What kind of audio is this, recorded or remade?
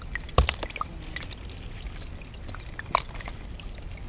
recorded